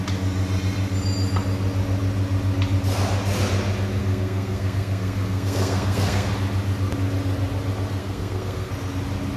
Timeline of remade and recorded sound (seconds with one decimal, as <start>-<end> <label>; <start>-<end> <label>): 0.0-4.0 recorded; 4.0-6.3 remade; 6.3-8.0 recorded; 8.0-8.7 remade; 8.7-9.4 recorded

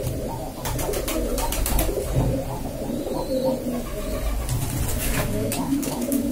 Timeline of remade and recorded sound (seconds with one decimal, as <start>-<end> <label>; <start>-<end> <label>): 0.0-4.9 recorded; 4.9-6.3 remade

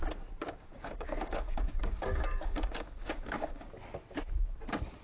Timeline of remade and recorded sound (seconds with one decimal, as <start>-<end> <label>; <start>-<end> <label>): 0.0-0.6 recorded; 0.6-3.6 remade; 3.6-5.0 recorded

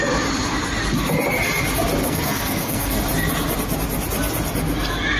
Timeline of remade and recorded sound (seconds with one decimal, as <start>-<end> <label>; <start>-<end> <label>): 0.0-2.0 recorded; 2.0-3.0 remade; 3.0-5.2 recorded